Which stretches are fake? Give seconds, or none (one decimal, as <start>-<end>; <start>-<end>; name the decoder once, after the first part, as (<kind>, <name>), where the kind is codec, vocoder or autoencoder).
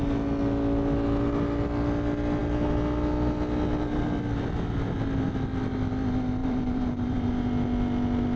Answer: 6.4-7.3 (vocoder, BigVGAN v2)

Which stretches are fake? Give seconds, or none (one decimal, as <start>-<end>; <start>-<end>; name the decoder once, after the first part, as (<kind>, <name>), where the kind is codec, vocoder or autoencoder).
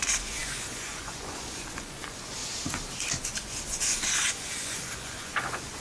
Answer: 0.0-2.4 (vocoder, Vocos); 3.2-5.8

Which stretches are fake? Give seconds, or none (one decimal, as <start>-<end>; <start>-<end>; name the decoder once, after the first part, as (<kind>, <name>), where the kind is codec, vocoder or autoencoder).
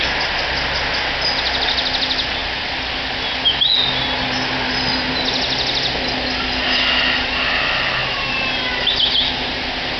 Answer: none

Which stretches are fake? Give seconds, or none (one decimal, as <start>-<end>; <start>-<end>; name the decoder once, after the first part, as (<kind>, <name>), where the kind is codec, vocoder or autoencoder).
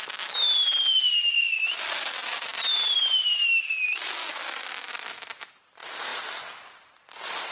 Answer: 4.2-5.5 (autoencoder, DAC-VAE)